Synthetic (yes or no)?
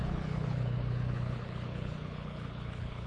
yes